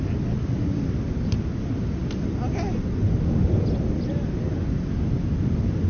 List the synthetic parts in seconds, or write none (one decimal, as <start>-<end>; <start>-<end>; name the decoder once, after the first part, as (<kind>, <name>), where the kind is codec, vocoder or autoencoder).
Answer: none